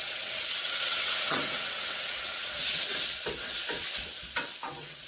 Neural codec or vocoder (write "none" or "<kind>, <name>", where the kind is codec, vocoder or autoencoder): vocoder, WaveNeXt